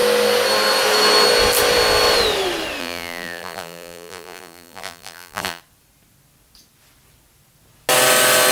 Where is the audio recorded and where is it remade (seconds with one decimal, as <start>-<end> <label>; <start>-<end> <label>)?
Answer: 0.0-2.8 recorded; 2.8-5.6 remade; 5.6-8.5 recorded